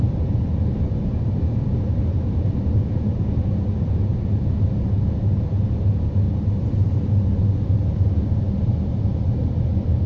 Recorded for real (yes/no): yes